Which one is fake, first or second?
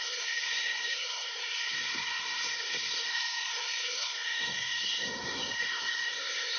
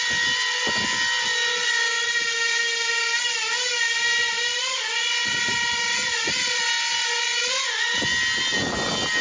first